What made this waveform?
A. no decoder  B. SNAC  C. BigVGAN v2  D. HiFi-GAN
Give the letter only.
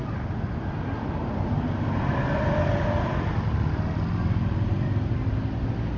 A